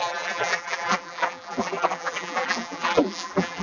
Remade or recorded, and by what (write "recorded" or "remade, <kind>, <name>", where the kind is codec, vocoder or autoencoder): remade, vocoder, BigVGAN v2